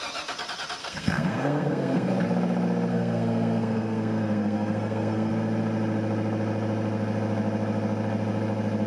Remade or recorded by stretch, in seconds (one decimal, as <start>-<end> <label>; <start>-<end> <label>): 0.0-0.8 recorded; 0.8-2.1 remade; 2.1-2.9 recorded; 2.9-5.3 remade; 5.3-8.9 recorded

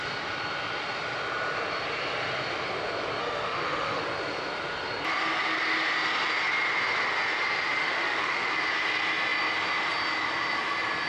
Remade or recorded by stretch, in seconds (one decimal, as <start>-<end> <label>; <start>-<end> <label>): 0.0-3.2 recorded; 3.2-4.0 remade; 4.0-7.8 recorded; 7.8-8.5 remade; 8.5-11.1 recorded